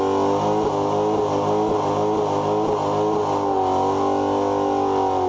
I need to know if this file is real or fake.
real